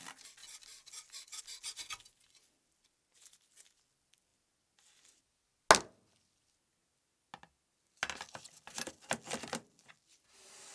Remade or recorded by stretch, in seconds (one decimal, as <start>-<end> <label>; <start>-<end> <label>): 0.0-10.7 recorded